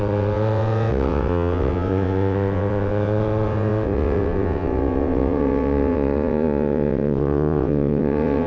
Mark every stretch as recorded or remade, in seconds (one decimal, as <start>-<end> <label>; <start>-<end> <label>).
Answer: 0.0-8.5 remade